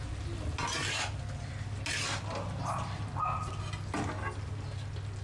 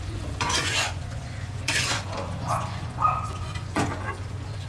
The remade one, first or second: second